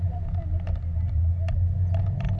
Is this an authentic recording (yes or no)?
yes